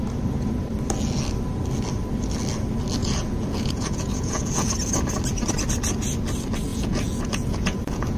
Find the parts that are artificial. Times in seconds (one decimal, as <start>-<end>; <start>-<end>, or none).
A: 3.0-4.7; 6.7-8.2